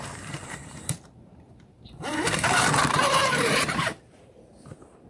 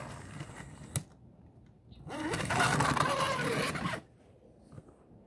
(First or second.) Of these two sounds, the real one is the second